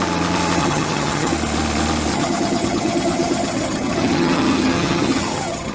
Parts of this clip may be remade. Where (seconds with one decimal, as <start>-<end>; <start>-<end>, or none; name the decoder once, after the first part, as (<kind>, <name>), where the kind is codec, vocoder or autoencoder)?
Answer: 0.6-1.3 (vocoder, HiFi-GAN); 2.1-5.7